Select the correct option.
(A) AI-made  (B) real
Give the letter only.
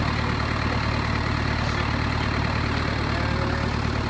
B